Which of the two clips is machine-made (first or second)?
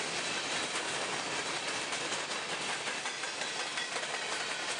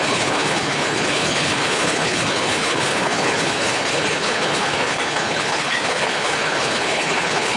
second